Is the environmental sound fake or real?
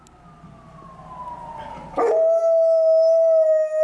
real